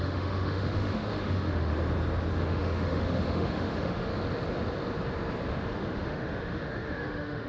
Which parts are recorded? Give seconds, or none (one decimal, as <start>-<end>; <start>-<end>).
1.7-2.3; 4.1-5.5